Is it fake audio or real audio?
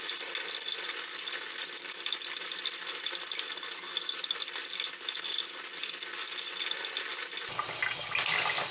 real